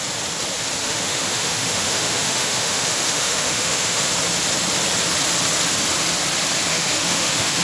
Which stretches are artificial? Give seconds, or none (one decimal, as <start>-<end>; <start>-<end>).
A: 0.8-4.1; 6.7-7.6